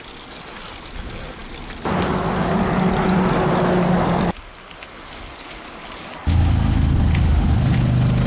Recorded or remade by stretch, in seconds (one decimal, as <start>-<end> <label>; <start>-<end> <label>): 0.0-8.3 recorded

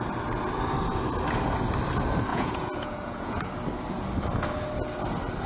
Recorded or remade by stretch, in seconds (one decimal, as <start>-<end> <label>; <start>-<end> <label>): 0.0-2.3 recorded; 2.3-3.5 remade; 3.5-5.5 recorded

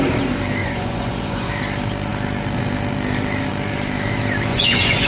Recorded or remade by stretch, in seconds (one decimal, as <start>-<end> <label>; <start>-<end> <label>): 0.0-0.6 recorded; 0.6-1.5 remade; 1.5-4.5 recorded; 4.5-5.1 remade

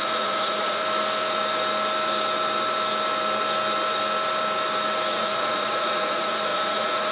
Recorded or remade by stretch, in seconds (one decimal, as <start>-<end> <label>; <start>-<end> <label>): 0.0-0.8 remade; 0.8-5.1 recorded; 5.1-7.1 remade

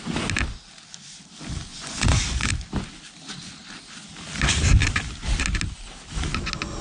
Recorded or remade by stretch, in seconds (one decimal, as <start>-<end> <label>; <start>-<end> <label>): 0.0-1.7 recorded; 1.7-2.5 remade; 2.5-6.8 recorded

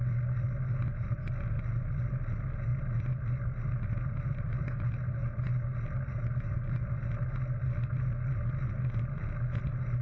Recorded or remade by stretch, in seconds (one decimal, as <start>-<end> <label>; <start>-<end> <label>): 0.0-10.0 recorded

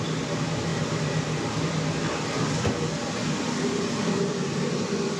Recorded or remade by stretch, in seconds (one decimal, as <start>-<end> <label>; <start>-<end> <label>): 0.0-5.2 recorded